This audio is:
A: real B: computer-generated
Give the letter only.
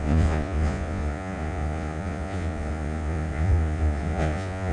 B